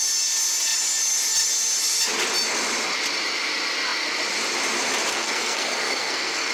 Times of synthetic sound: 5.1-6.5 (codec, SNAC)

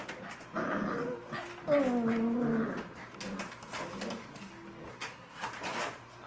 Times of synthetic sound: 4.9-5.5 (codec, SNAC)